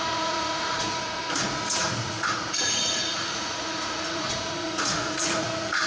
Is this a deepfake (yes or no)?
yes